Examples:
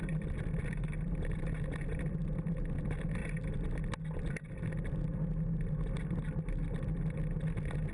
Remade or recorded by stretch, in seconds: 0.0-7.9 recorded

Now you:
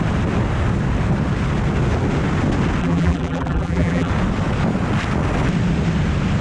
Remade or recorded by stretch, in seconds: 0.0-2.8 recorded; 2.8-4.1 remade; 4.1-6.4 recorded

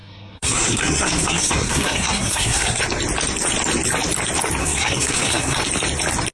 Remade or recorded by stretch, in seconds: 0.0-2.8 remade; 2.8-4.6 recorded; 4.6-5.6 remade; 5.6-6.3 recorded

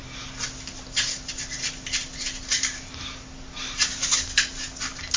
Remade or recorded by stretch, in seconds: 0.0-5.2 recorded